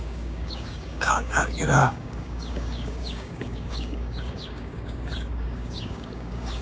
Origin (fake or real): fake